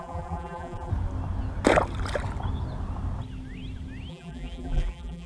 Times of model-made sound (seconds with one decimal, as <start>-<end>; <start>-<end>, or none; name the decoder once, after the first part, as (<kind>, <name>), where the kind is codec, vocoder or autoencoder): 0.0-0.9 (vocoder, BigVGAN v2); 4.1-5.3

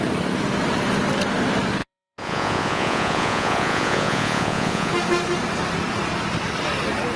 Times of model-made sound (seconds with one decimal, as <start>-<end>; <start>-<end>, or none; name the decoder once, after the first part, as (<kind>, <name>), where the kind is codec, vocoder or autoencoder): 1.8-4.9 (vocoder, Vocos)

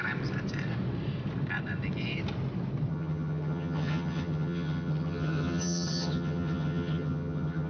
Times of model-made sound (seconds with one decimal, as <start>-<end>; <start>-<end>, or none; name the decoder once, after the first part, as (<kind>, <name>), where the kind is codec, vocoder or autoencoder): 2.9-7.7 (vocoder, HiFi-GAN)

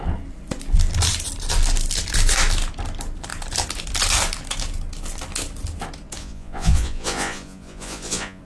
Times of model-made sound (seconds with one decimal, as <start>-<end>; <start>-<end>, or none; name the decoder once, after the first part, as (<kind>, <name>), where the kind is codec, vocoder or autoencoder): 6.2-8.4 (vocoder, Vocos)

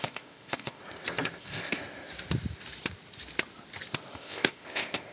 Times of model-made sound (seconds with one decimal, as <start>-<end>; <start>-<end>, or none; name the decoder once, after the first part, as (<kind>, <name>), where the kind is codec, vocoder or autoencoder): 0.0-0.8 (codec, ZipCodec); 1.4-1.8; 4.2-5.1